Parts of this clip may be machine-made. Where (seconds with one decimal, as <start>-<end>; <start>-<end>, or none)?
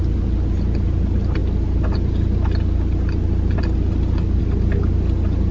none